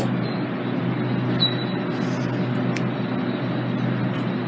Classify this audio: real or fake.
real